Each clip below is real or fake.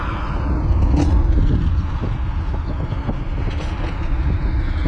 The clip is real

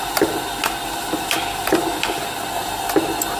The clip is real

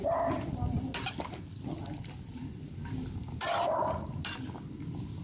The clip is real